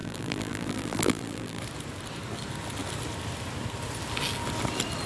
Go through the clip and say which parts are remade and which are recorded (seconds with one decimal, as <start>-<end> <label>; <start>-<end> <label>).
0.0-1.6 remade; 1.6-5.1 recorded